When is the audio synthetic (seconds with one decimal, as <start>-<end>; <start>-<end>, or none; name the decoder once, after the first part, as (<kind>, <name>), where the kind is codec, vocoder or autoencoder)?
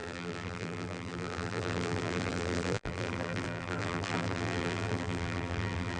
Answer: 0.0-6.0 (vocoder, BigVGAN v2)